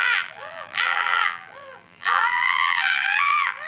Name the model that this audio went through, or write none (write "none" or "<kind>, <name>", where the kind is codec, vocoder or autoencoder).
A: vocoder, BigVGAN v2